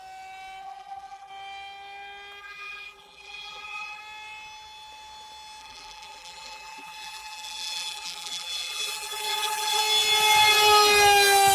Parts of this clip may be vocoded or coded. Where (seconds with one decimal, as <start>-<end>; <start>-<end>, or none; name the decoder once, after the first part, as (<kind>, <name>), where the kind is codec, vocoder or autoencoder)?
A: 0.6-1.3 (vocoder, BigVGAN v2); 2.4-4.0; 5.6-9.8